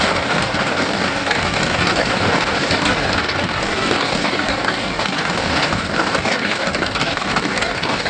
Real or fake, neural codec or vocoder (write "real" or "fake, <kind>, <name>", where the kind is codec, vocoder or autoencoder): fake, codec, DAC